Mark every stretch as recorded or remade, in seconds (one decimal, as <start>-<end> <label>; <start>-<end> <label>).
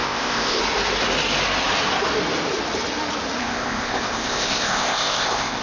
0.0-0.6 remade; 0.6-3.4 recorded; 3.4-5.6 remade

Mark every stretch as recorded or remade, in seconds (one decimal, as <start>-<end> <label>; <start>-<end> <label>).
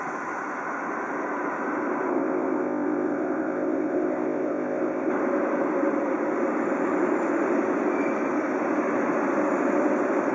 0.0-2.1 recorded; 2.1-5.1 remade; 5.1-10.3 recorded